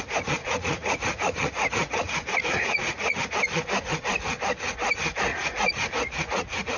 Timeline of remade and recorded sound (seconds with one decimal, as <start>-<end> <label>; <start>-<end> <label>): 0.0-0.4 recorded; 0.4-3.2 remade; 3.2-5.3 recorded; 5.3-6.8 remade